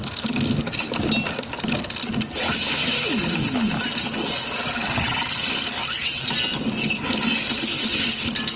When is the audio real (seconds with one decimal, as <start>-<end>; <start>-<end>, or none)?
0.0-8.6